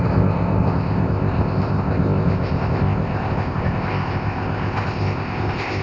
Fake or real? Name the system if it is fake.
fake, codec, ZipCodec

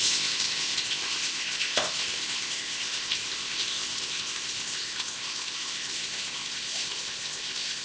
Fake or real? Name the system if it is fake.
fake, codec, ZipCodec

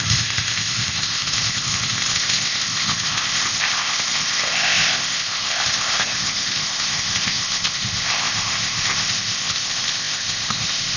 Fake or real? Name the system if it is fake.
fake, codec, ZipCodec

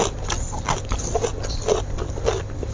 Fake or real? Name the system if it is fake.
real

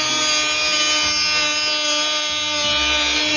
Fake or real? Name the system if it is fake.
real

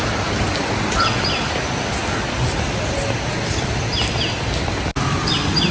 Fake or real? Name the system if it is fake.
real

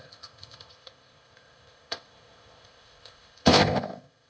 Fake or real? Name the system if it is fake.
fake, codec, ZipCodec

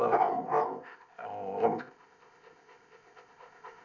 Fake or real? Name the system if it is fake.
fake, codec, ZipCodec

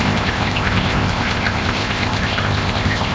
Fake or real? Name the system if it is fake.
fake, codec, ZipCodec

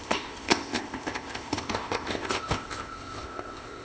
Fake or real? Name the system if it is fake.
fake, codec, ZipCodec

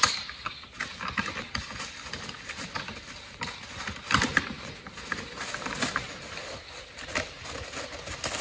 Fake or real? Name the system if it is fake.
real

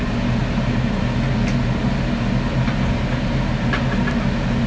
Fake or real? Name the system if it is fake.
real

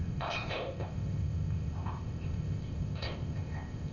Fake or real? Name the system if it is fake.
fake, codec, ZipCodec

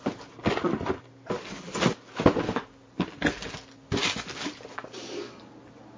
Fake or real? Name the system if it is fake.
real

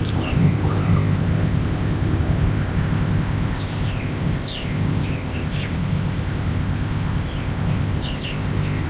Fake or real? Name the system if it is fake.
fake, codec, ZipCodec